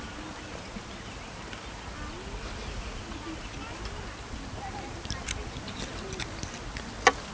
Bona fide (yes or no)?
yes